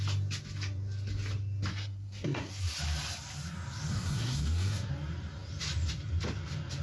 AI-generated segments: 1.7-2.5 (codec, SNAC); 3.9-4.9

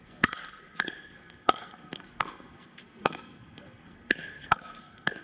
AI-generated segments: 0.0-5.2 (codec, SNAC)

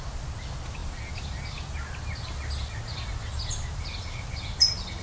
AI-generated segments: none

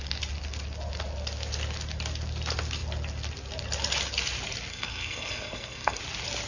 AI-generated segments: 4.7-6.0 (codec, SNAC)

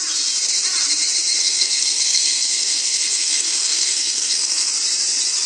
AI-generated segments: 1.4-4.7 (codec, SNAC)

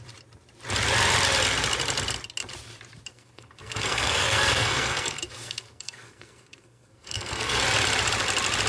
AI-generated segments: 3.1-7.6 (codec, SNAC)

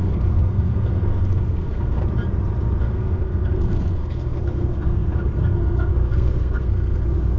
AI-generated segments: 0.0-2.0 (codec, SNAC); 2.8-7.4